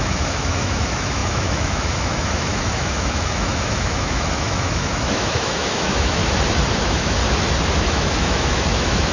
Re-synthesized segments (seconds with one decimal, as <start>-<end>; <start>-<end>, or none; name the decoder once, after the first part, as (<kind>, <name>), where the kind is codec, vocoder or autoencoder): 0.0-6.2 (autoencoder, DAC-VAE); 6.8-7.2; 7.8-9.1